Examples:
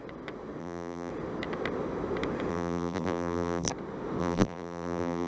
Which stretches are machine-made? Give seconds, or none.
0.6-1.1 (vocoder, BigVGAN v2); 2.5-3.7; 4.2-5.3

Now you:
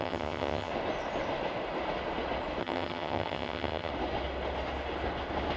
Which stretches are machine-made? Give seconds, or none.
0.0-0.7 (vocoder, HiFi-GAN); 2.6-3.9

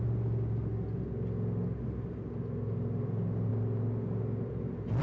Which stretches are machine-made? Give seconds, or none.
none